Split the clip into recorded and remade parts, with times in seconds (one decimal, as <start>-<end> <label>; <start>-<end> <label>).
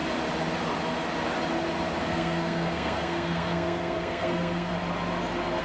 0.0-2.0 recorded; 2.0-4.7 remade; 4.7-5.6 recorded